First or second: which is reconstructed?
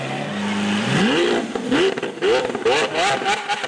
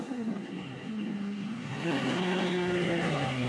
second